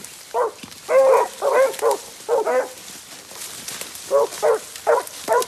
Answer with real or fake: real